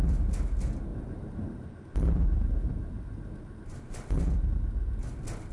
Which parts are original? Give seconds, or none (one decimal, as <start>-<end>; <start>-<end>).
0.0-0.9; 4.2-5.5